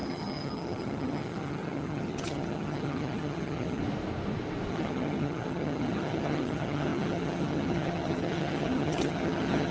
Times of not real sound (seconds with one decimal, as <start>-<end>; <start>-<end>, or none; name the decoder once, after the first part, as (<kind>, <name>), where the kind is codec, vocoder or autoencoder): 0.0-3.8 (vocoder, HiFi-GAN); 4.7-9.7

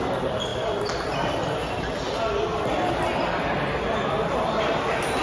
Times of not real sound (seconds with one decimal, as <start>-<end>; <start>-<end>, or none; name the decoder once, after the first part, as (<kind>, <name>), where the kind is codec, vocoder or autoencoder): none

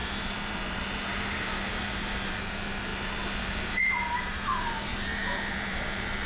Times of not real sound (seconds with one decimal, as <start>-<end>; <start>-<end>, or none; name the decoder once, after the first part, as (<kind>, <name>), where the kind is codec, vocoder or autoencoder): 0.0-6.3 (vocoder, BigVGAN v2)

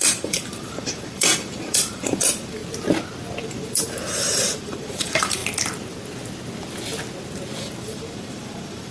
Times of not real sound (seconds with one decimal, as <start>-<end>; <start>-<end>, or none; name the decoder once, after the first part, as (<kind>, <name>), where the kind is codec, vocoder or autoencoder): 0.0-2.6 (vocoder, BigVGAN v2); 3.4-5.4; 7.6-8.9

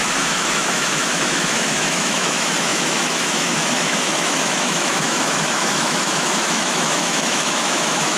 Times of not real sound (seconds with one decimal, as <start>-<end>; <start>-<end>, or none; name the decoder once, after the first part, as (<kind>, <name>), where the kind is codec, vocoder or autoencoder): 0.0-8.2 (autoencoder, DAC-VAE)

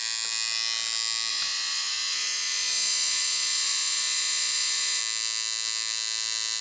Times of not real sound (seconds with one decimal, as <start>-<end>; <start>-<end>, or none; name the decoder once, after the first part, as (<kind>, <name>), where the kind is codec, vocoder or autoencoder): 1.3-5.0 (vocoder, Vocos)

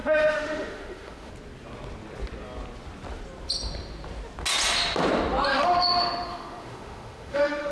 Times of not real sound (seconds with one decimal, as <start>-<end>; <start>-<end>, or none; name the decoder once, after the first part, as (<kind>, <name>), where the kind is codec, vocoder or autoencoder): 0.0-1.3 (autoencoder, DAC-VAE); 5.5-7.7

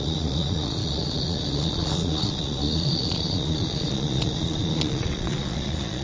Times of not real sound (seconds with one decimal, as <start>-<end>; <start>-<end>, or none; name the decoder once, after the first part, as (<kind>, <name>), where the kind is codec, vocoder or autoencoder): 0.0-6.0 (vocoder, Vocos)